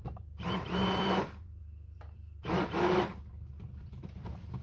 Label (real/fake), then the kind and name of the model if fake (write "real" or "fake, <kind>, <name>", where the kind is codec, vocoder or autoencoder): fake, vocoder, BigVGAN v2